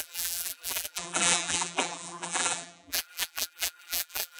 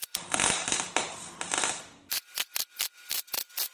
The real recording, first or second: second